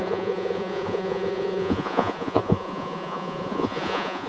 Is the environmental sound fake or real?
fake